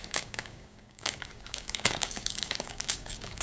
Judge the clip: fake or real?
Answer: fake